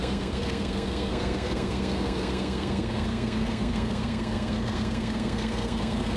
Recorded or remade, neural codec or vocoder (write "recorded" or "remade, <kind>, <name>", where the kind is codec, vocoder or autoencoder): remade, codec, SNAC